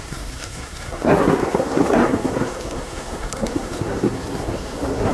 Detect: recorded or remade remade